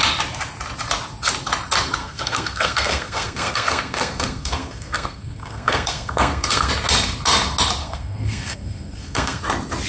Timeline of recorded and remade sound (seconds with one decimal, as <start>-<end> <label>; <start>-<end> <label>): 0.0-2.0 recorded; 2.0-6.7 remade; 6.7-7.8 recorded; 7.8-9.4 remade; 9.4-9.9 recorded